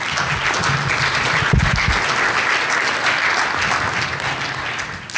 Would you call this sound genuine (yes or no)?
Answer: yes